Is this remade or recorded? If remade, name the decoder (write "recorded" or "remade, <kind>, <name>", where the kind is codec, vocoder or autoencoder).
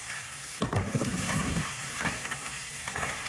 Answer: remade, codec, SNAC